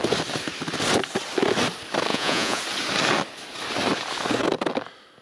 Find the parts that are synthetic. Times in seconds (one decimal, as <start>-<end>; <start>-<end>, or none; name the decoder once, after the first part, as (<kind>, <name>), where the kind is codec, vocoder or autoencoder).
2.1-2.6 (vocoder, Vocos)

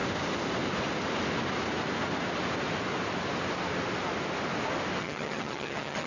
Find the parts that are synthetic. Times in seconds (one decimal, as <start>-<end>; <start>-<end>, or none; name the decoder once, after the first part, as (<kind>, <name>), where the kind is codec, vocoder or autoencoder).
5.0-6.1 (vocoder, HiFi-GAN)

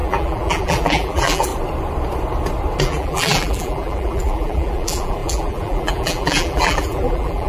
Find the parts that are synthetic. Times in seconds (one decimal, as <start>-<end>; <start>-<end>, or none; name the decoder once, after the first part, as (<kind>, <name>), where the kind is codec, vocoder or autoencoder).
0.0-1.5 (vocoder, BigVGAN v2); 2.8-7.5

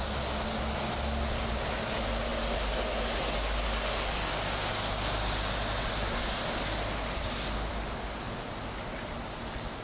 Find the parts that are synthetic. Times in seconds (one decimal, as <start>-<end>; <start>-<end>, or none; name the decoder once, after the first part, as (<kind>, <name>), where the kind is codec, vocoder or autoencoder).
none

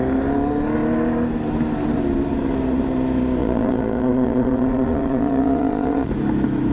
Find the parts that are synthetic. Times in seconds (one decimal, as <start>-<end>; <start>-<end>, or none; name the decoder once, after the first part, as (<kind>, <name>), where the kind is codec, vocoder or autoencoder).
3.4-6.1 (vocoder, Vocos)

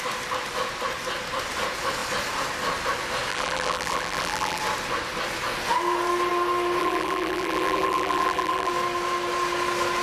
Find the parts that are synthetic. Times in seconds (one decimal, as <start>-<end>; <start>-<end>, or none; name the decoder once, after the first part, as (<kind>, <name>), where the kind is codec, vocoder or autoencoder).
3.3-4.6 (vocoder, BigVGAN v2); 6.8-8.7

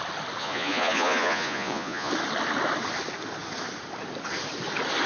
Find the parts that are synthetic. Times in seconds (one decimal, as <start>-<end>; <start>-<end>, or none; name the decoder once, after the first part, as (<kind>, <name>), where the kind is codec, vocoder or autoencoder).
0.4-2.1 (vocoder, Vocos)

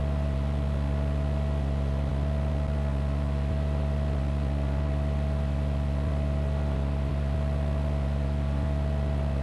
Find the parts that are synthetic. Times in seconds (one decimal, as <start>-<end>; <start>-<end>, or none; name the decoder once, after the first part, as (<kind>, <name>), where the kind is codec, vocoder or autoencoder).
none